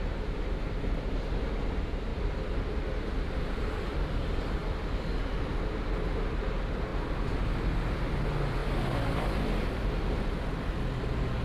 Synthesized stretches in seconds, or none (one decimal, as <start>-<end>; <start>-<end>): 2.1-4.5